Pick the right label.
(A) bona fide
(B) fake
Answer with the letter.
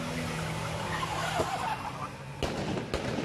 A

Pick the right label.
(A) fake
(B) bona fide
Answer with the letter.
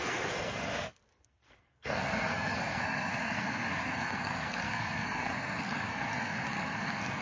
A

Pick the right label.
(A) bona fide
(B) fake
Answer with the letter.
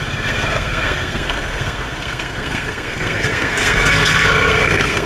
B